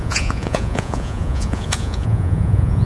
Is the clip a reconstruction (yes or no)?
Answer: yes